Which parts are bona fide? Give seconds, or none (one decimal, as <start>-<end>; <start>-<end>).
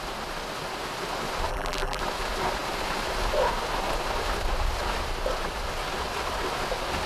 0.0-1.5; 2.0-7.1